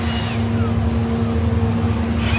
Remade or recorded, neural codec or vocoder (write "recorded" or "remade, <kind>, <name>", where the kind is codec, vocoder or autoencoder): recorded